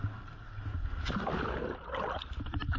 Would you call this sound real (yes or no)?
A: yes